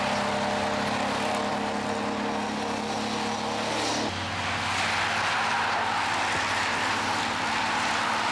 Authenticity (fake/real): real